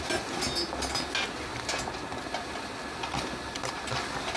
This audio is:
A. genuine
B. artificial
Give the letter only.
A